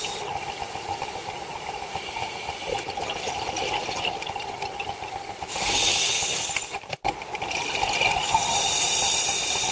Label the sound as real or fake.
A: real